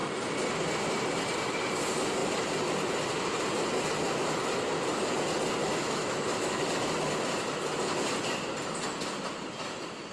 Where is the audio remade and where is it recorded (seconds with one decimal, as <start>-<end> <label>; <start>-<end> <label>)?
0.0-5.6 recorded; 5.6-6.6 remade; 6.6-10.1 recorded